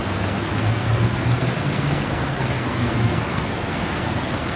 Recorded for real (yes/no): no